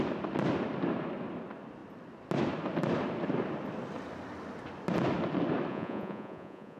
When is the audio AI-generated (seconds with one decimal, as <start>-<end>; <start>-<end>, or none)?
5.7-6.8

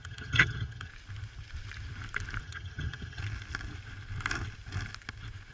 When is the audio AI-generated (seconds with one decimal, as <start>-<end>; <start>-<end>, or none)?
0.0-0.9; 2.4-3.2

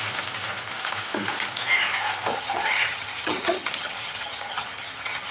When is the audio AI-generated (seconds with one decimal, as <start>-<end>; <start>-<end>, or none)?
2.3-5.3

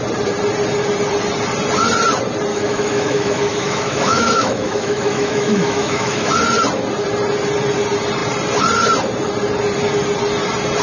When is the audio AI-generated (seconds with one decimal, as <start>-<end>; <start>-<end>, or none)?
2.5-6.3